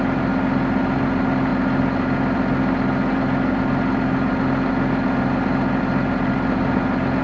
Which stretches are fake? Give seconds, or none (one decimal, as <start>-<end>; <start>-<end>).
none